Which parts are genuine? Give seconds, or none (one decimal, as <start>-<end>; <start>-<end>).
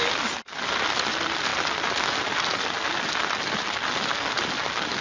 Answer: 0.0-5.0